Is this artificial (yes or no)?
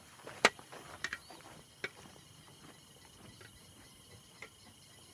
no